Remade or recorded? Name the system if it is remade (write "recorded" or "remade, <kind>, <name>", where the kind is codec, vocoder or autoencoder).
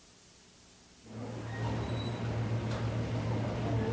recorded